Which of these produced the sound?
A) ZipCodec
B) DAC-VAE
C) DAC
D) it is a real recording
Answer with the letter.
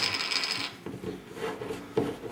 D